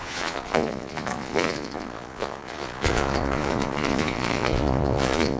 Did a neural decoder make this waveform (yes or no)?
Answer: yes